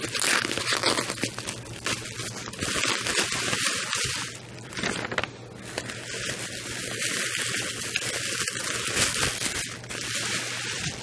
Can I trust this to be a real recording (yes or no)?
yes